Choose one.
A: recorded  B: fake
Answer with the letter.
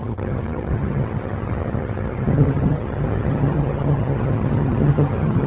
B